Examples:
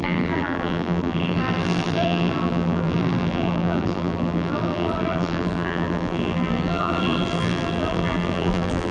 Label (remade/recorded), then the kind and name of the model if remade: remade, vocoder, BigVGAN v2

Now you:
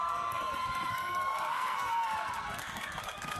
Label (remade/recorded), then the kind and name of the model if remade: remade, codec, SNAC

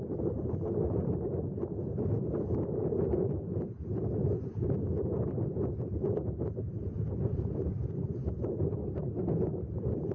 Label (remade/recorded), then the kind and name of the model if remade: recorded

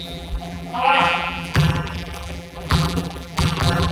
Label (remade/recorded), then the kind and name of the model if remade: remade, vocoder, BigVGAN v2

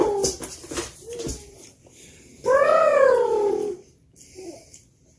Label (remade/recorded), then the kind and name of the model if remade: recorded